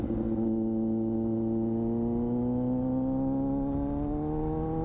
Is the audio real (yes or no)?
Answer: yes